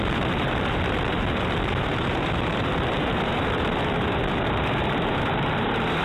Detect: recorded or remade remade